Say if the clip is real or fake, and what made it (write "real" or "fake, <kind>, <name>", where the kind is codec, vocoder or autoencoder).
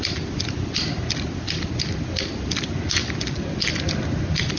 real